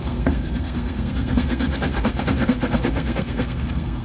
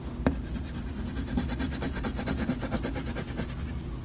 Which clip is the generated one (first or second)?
first